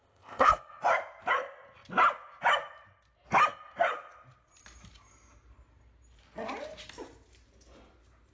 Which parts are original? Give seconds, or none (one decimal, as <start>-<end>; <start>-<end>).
0.5-8.3